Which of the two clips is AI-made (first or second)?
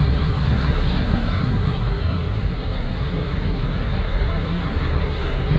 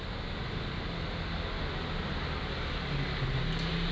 first